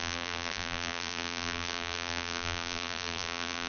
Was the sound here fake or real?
fake